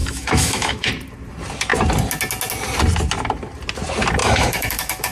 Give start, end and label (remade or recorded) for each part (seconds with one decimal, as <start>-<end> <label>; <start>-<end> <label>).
0.0-0.9 remade; 0.9-4.2 recorded; 4.2-5.1 remade